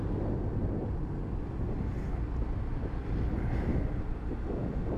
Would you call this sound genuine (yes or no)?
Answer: yes